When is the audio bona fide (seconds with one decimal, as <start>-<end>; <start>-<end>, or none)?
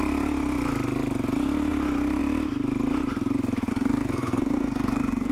0.0-3.7